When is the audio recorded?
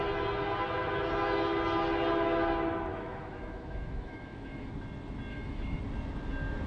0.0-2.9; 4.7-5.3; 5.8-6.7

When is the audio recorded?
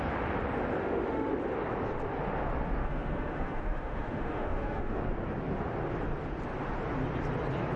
0.0-0.8; 1.3-2.8; 5.0-7.8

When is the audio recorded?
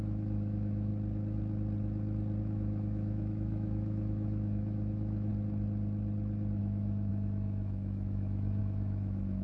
0.9-2.4; 5.3-6.6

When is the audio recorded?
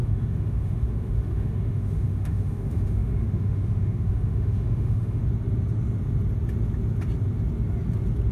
5.2-8.3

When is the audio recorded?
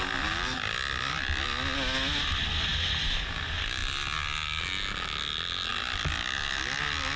0.0-7.2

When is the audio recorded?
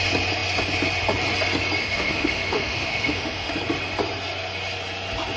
0.0-1.8; 3.5-5.4